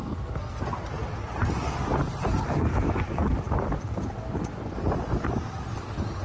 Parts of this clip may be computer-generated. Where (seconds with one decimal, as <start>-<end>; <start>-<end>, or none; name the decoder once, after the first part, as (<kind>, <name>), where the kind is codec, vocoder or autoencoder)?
0.0-0.6 (codec, SNAC)